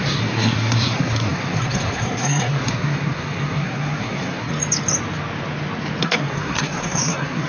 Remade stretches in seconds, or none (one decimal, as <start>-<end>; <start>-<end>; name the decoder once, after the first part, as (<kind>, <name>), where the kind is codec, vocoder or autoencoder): 0.0-4.5 (codec, SNAC); 6.0-7.5